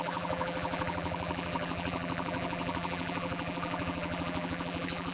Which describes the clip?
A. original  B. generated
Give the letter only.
B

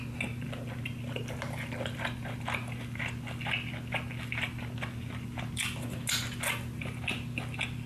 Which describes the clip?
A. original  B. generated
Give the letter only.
A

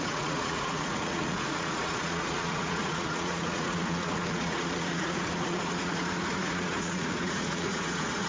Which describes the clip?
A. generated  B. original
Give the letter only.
A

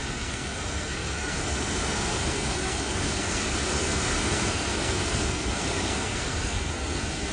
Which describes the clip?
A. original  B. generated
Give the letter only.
B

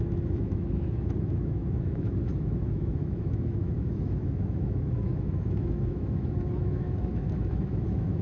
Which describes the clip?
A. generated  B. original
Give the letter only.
A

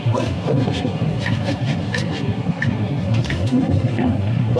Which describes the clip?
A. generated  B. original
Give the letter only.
A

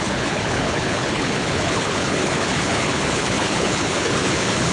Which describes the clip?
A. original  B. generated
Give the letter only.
B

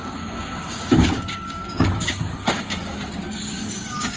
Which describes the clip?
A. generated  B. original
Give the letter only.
A